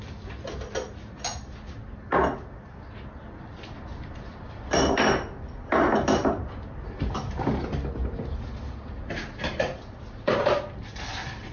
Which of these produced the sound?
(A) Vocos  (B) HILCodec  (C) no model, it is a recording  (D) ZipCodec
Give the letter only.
C